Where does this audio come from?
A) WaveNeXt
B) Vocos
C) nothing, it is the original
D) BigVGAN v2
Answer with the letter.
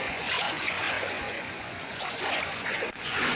B